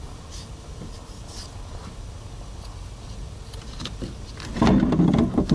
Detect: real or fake real